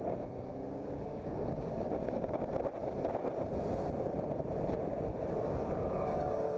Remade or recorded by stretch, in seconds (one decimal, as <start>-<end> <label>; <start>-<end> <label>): 0.0-0.5 recorded; 0.5-2.4 remade; 2.4-5.1 recorded; 5.1-6.6 remade